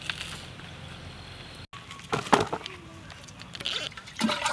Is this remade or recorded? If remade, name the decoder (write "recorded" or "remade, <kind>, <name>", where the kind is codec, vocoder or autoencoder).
recorded